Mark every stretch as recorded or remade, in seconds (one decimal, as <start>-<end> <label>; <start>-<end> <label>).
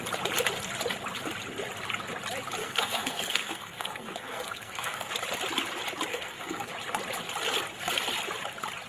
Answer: 0.0-2.6 recorded; 2.6-5.1 remade; 5.1-6.1 recorded; 6.1-6.7 remade; 6.7-8.9 recorded